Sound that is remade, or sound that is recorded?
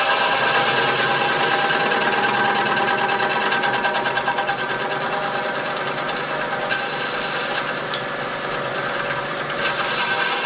recorded